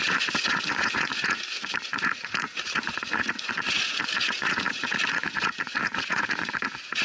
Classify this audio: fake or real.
fake